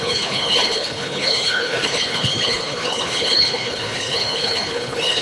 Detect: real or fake fake